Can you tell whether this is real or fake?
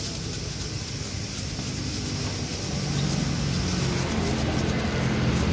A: real